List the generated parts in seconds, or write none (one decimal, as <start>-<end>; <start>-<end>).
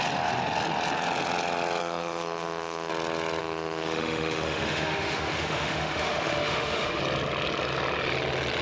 1.8-2.9; 3.4-7.0